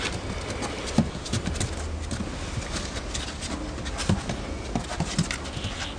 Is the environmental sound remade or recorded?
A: recorded